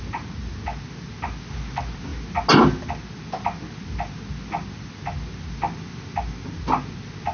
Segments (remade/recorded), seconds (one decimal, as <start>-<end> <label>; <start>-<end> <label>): 0.0-7.3 recorded